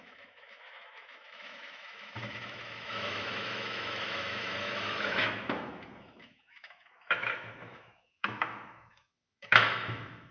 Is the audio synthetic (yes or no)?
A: yes